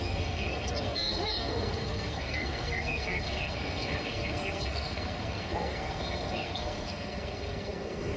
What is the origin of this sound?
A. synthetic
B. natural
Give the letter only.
A